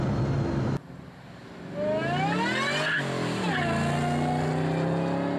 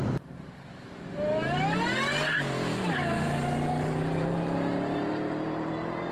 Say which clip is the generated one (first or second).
second